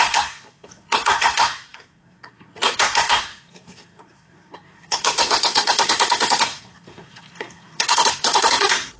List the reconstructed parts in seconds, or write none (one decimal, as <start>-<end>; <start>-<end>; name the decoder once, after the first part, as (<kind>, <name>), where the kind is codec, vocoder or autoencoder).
0.0-9.0 (codec, SNAC)